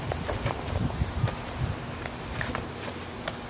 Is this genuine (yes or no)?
yes